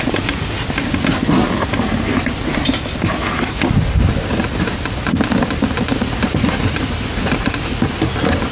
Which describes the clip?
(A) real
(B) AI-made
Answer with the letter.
A